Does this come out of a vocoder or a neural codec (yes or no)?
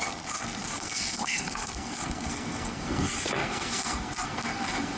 yes